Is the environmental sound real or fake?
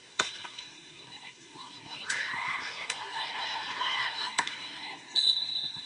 fake